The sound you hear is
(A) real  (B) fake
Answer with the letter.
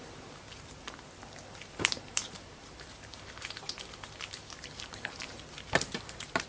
B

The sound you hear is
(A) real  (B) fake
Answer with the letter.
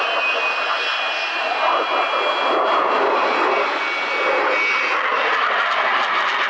A